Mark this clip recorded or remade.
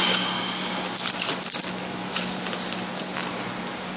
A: recorded